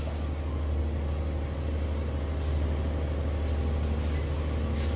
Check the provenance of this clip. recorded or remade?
recorded